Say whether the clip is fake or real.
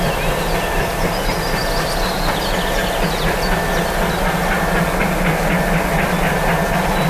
real